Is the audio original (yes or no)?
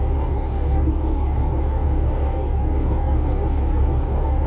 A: no